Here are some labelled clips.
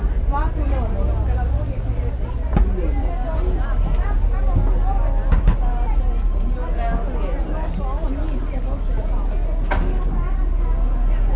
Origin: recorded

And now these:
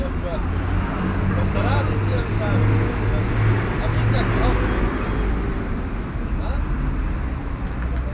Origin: recorded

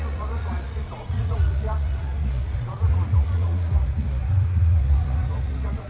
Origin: remade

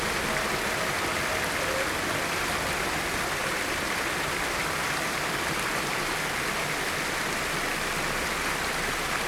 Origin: recorded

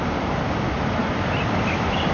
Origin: recorded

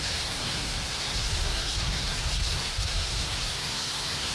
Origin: remade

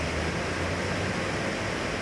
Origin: recorded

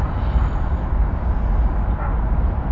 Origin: recorded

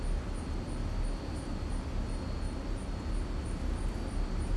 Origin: recorded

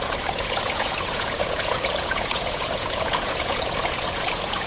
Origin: remade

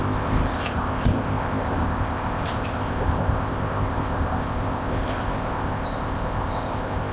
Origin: remade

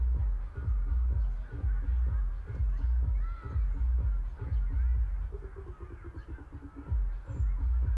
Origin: recorded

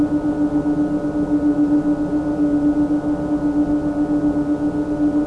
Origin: recorded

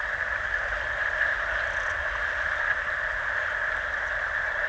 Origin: recorded